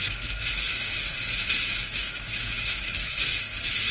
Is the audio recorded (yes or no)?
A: no